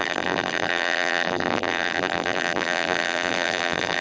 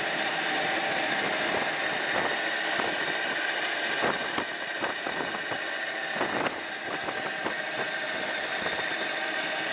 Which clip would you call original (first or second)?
second